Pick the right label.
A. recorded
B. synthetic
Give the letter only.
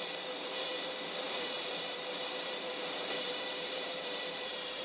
B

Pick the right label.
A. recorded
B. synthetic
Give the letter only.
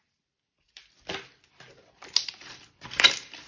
A